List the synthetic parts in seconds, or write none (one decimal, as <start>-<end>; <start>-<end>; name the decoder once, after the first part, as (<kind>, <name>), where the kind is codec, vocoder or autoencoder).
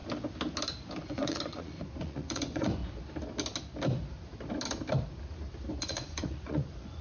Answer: 1.0-2.8 (vocoder, Vocos); 5.7-7.0